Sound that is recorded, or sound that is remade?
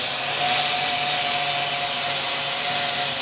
recorded